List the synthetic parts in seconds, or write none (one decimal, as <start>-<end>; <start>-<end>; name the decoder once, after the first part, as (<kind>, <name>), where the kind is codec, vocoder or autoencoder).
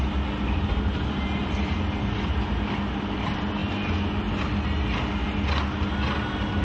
none